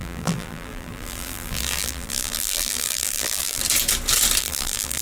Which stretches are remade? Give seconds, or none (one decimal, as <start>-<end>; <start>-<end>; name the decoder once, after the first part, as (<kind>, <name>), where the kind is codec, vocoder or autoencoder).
0.0-3.6 (vocoder, BigVGAN v2); 4.4-5.0